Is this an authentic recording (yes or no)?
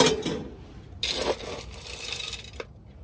yes